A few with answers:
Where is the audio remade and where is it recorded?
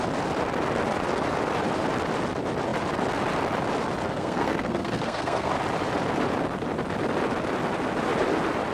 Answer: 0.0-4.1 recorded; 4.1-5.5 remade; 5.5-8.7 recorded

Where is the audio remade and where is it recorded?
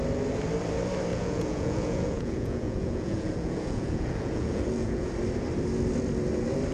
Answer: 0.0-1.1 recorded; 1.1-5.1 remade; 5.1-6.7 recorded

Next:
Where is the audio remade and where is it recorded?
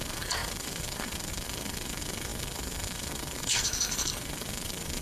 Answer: 0.0-5.0 remade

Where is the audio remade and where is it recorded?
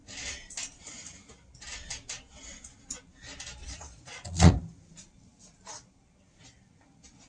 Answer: 0.0-3.6 recorded; 3.6-4.5 remade; 4.5-7.3 recorded